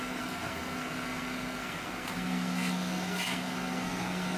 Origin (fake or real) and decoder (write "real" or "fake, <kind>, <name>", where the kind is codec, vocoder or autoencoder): fake, codec, SNAC